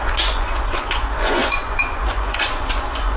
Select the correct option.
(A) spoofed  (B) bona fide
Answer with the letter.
A